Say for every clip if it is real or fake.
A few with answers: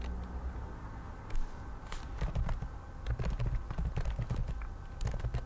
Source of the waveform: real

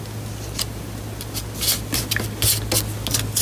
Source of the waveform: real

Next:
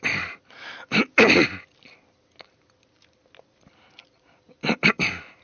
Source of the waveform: real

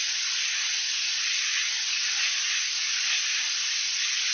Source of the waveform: real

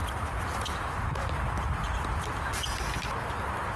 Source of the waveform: real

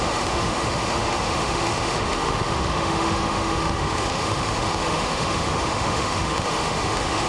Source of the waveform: fake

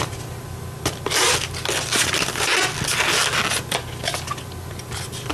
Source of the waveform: real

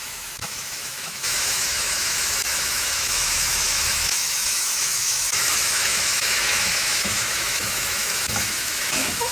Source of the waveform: fake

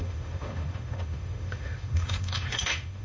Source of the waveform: fake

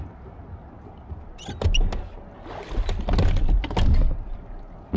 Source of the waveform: real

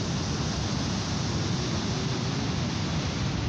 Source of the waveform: real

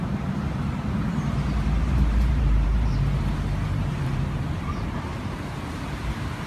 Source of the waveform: fake